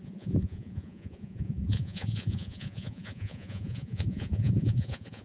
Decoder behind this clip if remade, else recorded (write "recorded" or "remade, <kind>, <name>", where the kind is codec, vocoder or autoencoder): remade, vocoder, Vocos